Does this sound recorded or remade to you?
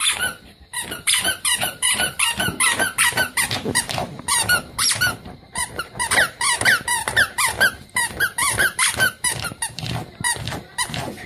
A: remade